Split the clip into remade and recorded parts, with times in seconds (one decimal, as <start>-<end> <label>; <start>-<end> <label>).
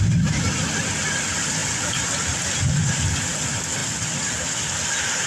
0.0-5.3 recorded